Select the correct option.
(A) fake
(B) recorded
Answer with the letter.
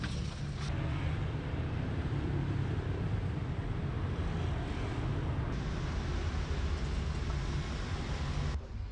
B